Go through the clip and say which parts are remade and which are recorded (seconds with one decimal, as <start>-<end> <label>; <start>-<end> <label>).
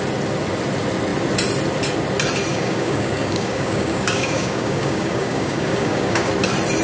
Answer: 0.0-2.5 recorded; 2.5-6.3 remade; 6.3-6.8 recorded